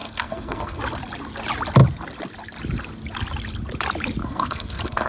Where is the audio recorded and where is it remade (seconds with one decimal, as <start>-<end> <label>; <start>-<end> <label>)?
0.0-0.8 remade; 0.8-4.2 recorded; 4.2-5.1 remade